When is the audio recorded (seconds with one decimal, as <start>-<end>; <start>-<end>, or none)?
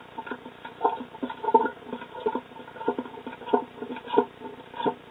0.0-1.7; 2.6-5.1